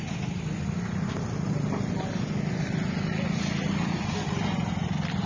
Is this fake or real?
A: real